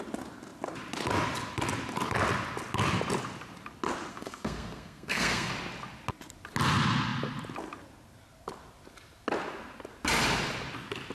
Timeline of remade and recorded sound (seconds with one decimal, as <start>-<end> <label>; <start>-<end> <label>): 0.0-4.1 recorded; 4.1-5.5 remade; 5.5-11.1 recorded